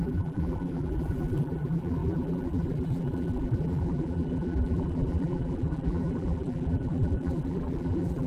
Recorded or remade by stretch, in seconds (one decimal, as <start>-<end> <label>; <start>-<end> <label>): 0.0-8.3 remade